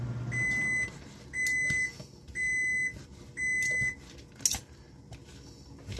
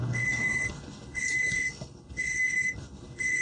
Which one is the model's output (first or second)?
second